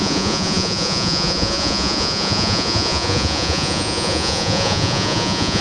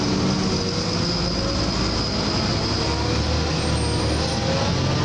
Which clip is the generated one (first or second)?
first